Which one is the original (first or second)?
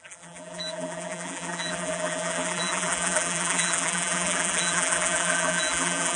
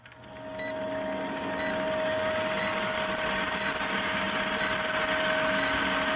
second